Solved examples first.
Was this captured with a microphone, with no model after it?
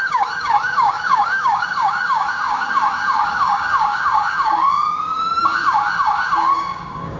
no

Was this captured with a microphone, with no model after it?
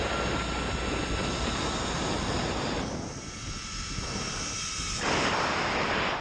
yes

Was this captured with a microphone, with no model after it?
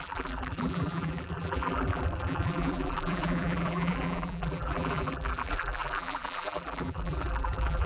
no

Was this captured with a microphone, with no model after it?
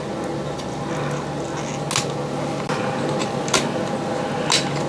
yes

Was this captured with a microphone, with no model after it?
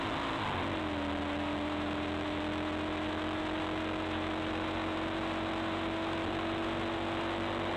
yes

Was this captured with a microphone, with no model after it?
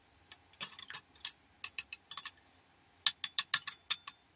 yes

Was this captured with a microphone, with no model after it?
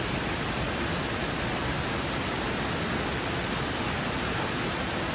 yes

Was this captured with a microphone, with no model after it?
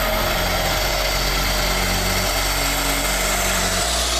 yes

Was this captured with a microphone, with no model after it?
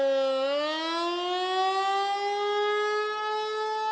yes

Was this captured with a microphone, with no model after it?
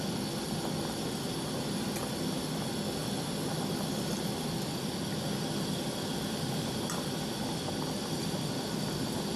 yes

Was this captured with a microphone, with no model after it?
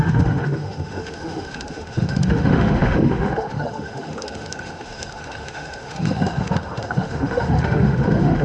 no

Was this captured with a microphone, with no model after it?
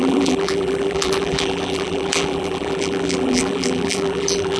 no